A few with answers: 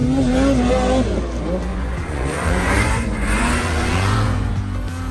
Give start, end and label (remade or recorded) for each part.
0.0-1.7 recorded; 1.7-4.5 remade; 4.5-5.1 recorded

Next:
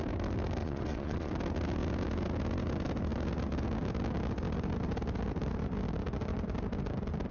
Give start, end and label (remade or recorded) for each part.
0.0-0.6 recorded; 0.6-1.3 remade; 1.3-7.3 recorded